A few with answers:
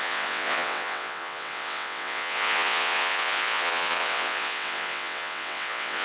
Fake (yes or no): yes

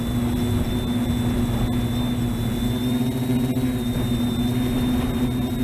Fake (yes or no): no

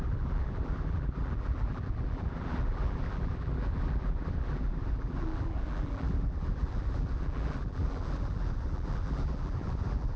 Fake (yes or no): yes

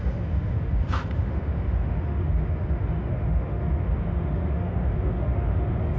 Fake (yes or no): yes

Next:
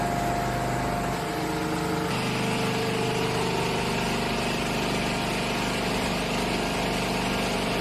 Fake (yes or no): no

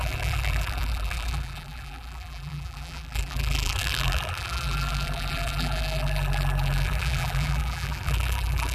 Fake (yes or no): yes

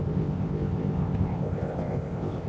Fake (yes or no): yes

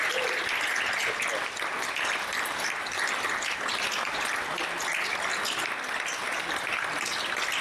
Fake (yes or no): no